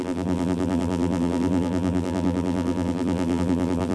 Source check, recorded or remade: remade